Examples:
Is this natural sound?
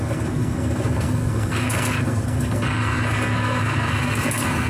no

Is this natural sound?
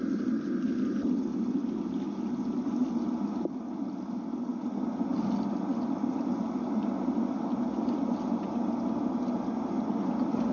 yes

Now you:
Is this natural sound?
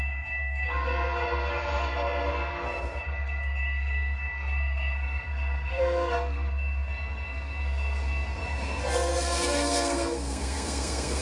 no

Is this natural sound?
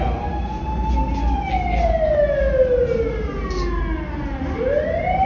yes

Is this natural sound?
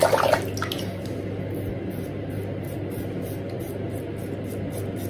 yes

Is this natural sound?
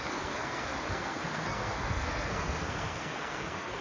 no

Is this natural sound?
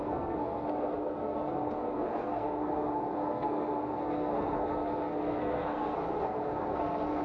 no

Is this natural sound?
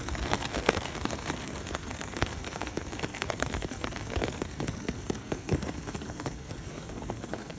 no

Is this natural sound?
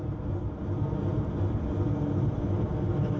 yes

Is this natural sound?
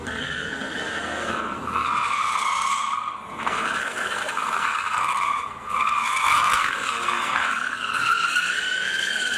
no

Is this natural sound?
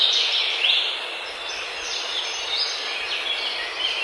yes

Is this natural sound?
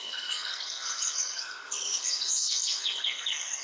no